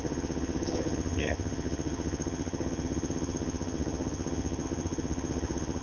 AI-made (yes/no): yes